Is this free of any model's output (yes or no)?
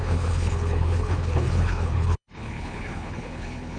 no